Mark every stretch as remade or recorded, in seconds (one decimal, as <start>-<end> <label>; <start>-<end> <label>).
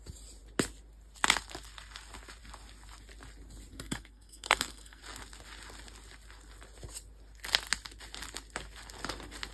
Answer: 0.0-3.7 recorded; 3.7-5.0 remade; 5.0-9.5 recorded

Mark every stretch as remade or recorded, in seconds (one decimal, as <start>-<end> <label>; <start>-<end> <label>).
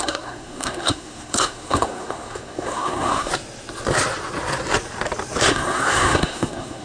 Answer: 0.0-3.3 remade; 3.3-5.5 recorded; 5.5-6.8 remade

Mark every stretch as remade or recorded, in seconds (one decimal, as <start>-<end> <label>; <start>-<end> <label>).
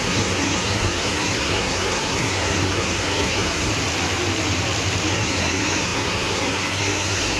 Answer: 0.0-3.7 remade; 3.7-5.1 recorded; 5.1-7.4 remade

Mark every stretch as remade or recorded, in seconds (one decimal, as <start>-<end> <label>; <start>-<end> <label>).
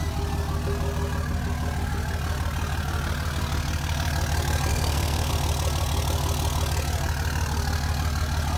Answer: 0.0-4.7 recorded; 4.7-5.3 remade; 5.3-8.6 recorded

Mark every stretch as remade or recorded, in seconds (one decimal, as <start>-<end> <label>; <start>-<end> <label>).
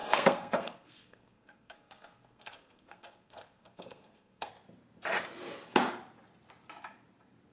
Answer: 0.0-4.5 remade; 4.5-7.5 recorded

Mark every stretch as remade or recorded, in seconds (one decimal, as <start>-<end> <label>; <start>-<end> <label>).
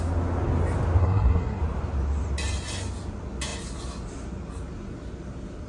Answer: 0.0-1.0 recorded; 1.0-1.6 remade; 1.6-5.7 recorded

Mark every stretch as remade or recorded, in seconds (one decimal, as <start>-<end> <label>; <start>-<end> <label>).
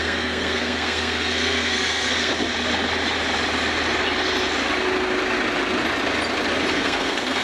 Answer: 0.0-2.3 remade; 2.3-6.7 recorded; 6.7-7.4 remade